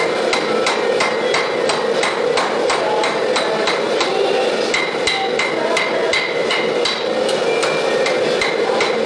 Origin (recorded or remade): recorded